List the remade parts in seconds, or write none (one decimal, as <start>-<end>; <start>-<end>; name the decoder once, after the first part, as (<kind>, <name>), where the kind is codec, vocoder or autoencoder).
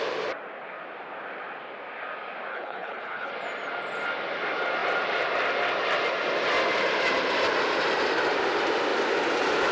2.5-3.3 (codec, HILCodec)